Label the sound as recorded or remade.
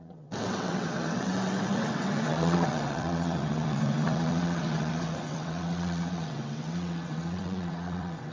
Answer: remade